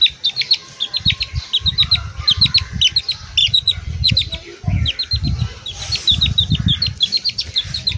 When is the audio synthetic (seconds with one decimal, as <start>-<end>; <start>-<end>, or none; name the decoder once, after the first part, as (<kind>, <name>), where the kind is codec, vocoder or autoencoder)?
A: 3.4-4.1 (vocoder, Vocos)